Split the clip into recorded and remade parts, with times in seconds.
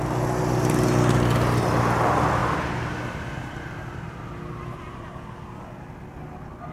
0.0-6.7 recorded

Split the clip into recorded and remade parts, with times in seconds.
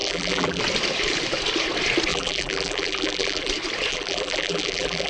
0.0-0.6 remade; 0.6-2.1 recorded; 2.1-3.5 remade; 3.5-3.9 recorded; 3.9-5.1 remade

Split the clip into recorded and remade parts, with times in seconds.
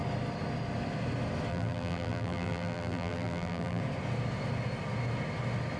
0.0-1.5 recorded; 1.5-3.8 remade; 3.8-5.8 recorded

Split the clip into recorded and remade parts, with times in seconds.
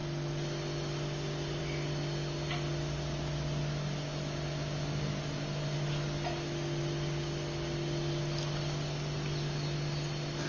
0.0-10.5 recorded